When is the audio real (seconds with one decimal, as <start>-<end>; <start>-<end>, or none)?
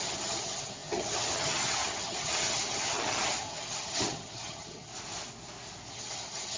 4.9-5.9